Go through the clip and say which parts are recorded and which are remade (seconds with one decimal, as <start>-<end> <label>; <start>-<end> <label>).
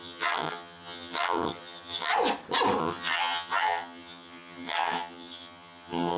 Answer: 0.0-2.1 remade; 2.1-2.8 recorded; 2.8-6.2 remade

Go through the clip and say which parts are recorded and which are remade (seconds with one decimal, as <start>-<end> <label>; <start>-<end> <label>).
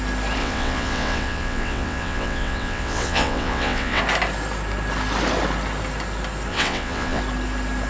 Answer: 0.0-0.4 recorded; 0.4-4.0 remade; 4.0-6.5 recorded; 6.5-7.2 remade; 7.2-7.9 recorded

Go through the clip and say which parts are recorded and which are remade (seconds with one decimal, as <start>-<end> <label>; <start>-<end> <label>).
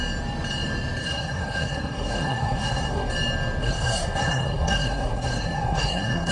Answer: 0.0-1.0 recorded; 1.0-3.1 remade; 3.1-3.6 recorded; 3.6-6.3 remade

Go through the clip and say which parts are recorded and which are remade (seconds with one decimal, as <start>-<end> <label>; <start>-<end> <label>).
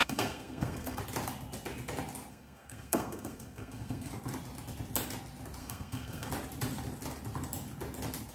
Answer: 0.0-1.0 remade; 1.0-2.3 recorded; 2.3-4.1 remade; 4.1-5.6 recorded; 5.6-6.3 remade; 6.3-8.3 recorded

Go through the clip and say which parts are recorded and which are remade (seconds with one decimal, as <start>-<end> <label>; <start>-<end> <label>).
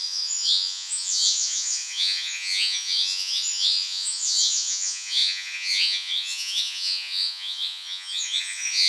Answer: 0.0-8.9 remade